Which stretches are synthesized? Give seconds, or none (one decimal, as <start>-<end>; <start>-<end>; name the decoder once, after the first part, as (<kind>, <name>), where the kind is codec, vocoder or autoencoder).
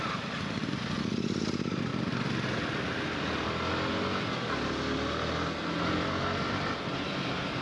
0.0-1.9 (vocoder, BigVGAN v2); 6.1-7.6